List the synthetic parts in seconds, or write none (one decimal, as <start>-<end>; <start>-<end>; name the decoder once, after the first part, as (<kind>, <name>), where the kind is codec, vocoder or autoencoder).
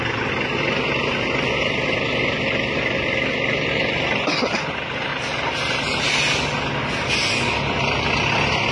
5.1-6.0 (vocoder, BigVGAN v2)